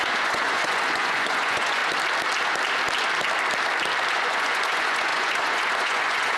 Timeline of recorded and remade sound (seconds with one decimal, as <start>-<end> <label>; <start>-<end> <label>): 0.0-1.8 remade; 1.8-4.1 recorded; 4.1-6.4 remade